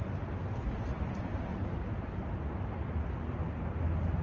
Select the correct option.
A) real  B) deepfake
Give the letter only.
A